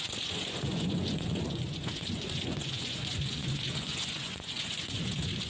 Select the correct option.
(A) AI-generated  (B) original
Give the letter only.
A